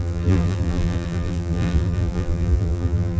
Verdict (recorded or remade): remade